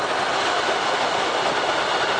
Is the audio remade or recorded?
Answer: recorded